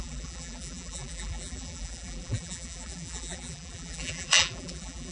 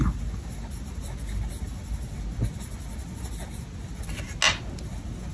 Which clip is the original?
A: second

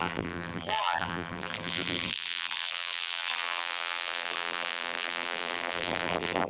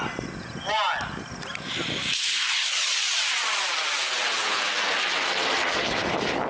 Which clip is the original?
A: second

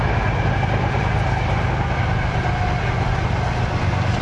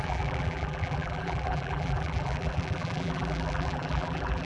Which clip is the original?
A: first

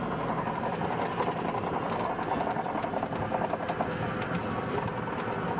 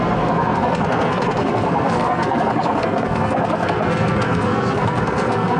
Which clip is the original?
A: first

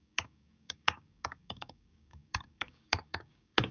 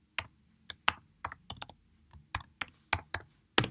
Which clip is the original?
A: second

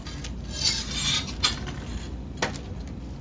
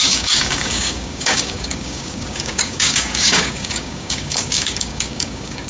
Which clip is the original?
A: first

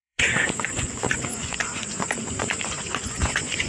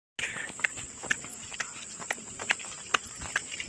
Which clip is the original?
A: second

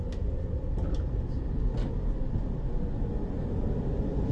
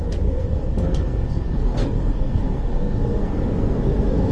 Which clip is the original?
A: first